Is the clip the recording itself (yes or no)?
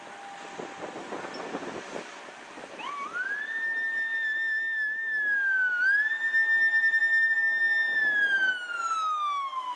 yes